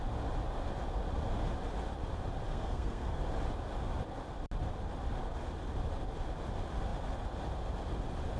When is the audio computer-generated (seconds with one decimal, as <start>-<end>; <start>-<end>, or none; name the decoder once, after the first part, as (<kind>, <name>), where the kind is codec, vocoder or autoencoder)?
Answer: 2.5-3.2 (codec, SNAC)